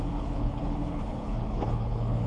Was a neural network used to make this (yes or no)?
yes